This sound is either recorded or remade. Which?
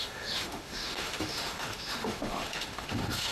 remade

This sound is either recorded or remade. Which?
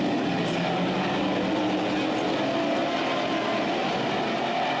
recorded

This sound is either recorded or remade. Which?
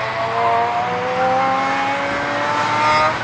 recorded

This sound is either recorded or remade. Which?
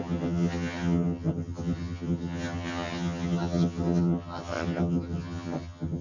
remade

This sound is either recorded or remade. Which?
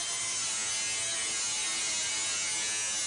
recorded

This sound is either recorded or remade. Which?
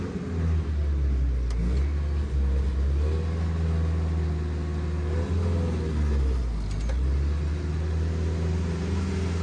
recorded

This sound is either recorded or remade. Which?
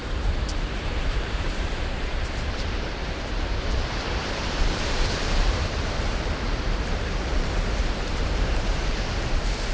remade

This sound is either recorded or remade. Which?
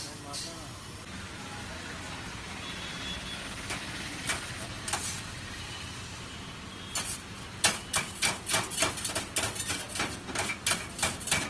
recorded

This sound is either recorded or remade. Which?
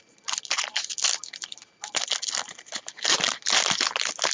recorded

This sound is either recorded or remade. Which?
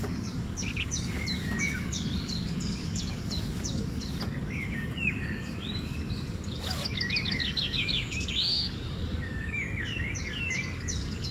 remade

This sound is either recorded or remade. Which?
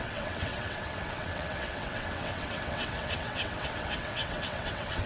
remade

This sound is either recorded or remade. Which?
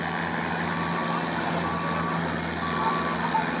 recorded